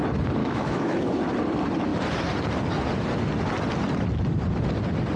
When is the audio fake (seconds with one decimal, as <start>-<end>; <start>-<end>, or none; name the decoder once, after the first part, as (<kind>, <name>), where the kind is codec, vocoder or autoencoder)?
0.4-1.2 (autoencoder, DAC-VAE)